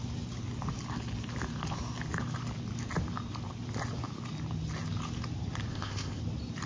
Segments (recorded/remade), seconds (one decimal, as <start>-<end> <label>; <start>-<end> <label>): 0.0-5.7 recorded; 5.7-6.2 remade; 6.2-6.7 recorded